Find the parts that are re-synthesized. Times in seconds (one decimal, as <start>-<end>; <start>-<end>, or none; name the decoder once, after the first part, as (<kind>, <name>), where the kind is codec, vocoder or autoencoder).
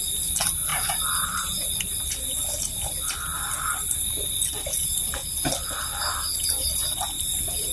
none